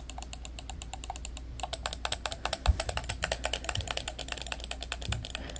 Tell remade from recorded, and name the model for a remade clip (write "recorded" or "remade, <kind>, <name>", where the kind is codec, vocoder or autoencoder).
recorded